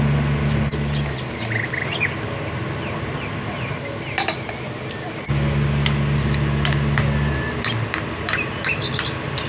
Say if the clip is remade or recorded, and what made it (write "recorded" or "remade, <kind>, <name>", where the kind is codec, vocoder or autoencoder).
recorded